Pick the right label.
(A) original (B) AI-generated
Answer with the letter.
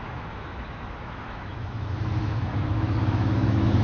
B